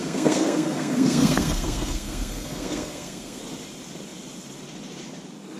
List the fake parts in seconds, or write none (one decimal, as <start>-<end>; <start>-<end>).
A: 0.0-3.4

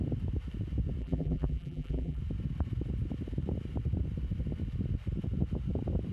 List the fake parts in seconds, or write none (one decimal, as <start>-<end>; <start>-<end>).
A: 1.0-2.2

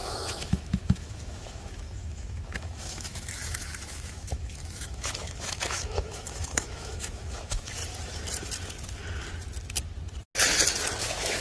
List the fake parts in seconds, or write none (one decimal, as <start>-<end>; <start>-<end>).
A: 0.0-7.8; 11.0-11.4

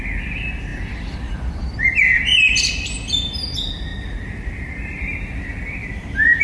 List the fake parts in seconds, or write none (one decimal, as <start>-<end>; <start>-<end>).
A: 0.7-2.7; 3.9-5.0; 5.8-6.4

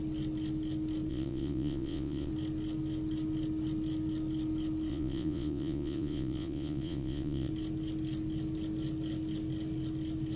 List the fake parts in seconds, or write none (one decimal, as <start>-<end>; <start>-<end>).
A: 1.1-2.3; 4.9-7.5